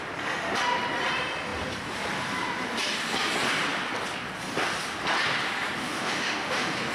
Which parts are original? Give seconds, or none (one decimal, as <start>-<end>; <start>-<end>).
0.0-5.8